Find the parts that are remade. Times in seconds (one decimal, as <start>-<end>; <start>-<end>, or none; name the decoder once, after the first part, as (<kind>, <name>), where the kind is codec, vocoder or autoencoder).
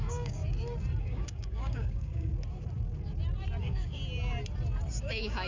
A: 0.0-0.4 (codec, DAC); 1.0-2.3; 3.6-4.0; 5.0-5.5